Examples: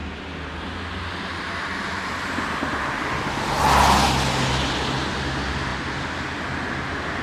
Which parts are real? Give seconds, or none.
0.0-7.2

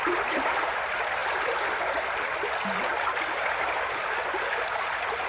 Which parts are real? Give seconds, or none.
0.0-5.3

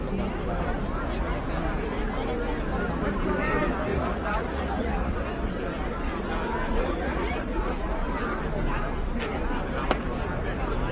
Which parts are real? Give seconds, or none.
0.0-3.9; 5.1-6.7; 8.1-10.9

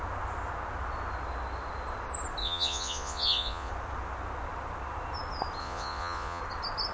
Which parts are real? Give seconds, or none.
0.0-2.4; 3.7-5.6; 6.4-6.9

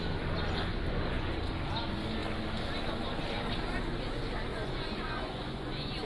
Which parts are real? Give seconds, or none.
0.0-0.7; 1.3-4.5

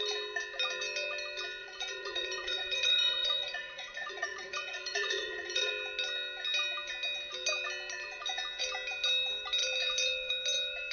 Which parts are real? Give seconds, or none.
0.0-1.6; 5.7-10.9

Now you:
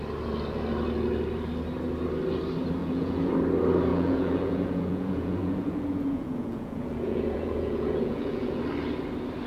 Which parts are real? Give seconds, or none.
0.0-2.8; 3.3-3.9; 8.6-9.5

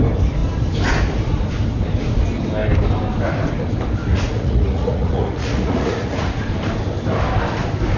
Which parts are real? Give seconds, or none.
0.0-4.1; 6.4-8.0